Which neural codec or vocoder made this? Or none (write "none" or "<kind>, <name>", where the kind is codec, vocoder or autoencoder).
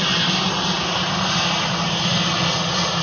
none